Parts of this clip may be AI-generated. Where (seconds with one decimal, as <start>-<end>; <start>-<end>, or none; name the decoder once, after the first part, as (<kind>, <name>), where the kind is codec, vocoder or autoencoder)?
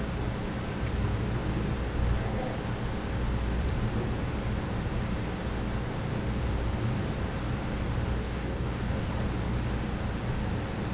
8.2-9.1 (codec, DAC)